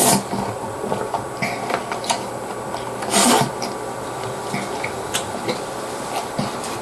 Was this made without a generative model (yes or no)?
yes